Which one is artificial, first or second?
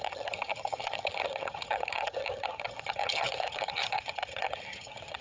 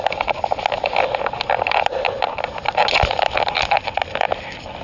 first